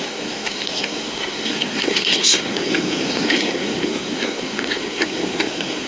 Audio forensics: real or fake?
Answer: fake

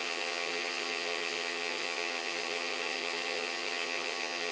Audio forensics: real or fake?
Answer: fake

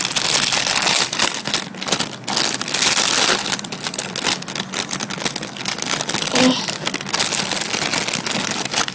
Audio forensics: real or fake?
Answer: real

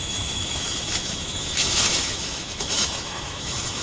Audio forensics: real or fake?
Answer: fake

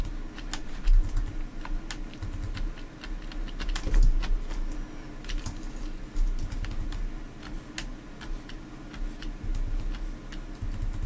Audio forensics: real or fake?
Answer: real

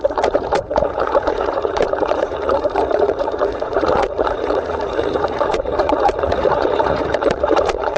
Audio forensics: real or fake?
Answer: fake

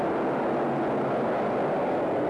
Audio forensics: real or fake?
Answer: real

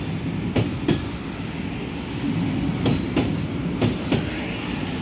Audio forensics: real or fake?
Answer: real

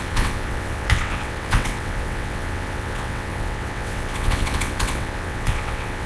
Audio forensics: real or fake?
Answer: fake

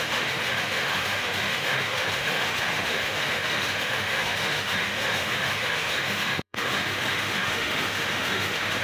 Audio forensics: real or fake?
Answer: fake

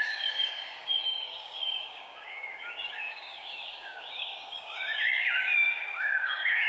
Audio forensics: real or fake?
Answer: fake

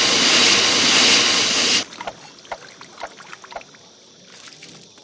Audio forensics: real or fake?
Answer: real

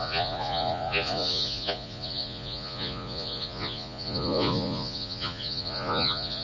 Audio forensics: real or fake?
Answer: fake